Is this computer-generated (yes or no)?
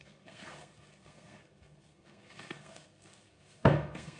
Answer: yes